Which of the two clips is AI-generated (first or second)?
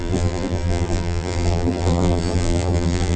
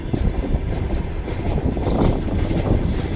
first